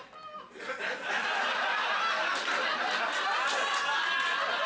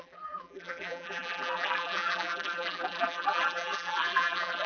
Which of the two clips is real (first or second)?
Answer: first